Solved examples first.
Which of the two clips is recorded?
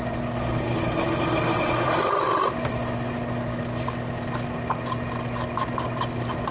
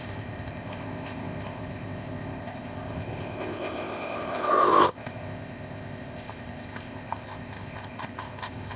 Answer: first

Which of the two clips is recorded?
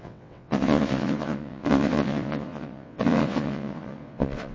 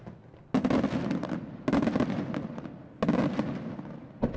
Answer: second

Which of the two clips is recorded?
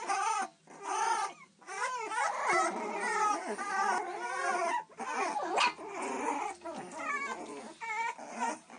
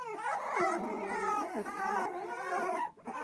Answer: first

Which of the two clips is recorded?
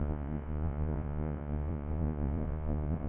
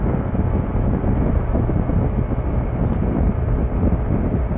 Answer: second